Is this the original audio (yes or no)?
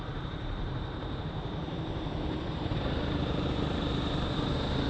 no